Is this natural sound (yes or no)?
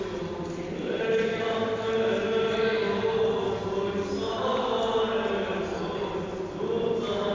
yes